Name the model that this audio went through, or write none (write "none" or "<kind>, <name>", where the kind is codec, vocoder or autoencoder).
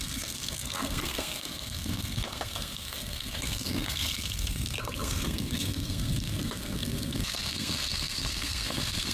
codec, SNAC